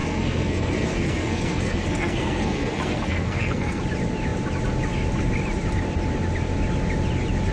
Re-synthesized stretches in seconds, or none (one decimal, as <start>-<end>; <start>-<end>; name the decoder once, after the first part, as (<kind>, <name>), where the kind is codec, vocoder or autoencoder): 0.0-3.8 (codec, SNAC)